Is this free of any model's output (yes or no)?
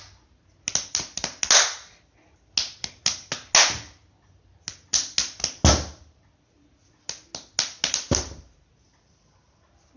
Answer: yes